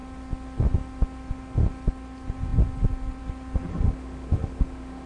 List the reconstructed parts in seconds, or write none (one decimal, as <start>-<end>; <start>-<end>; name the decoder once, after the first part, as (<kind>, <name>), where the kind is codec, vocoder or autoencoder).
3.7-5.1 (autoencoder, DAC-VAE)